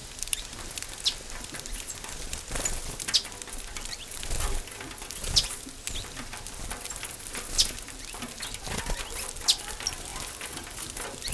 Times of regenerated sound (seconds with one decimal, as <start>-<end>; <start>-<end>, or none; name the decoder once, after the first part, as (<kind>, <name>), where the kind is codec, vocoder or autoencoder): 0.0-1.3 (vocoder, BigVGAN v2)